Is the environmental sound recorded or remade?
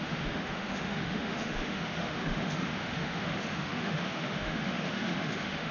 remade